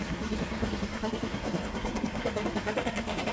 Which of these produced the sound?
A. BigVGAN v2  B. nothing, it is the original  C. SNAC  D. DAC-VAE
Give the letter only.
C